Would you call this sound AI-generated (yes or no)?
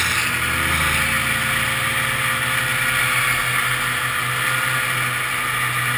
no